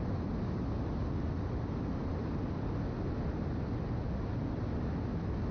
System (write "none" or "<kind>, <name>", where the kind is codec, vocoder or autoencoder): none